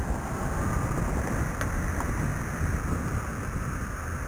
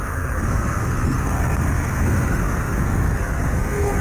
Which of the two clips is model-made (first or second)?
second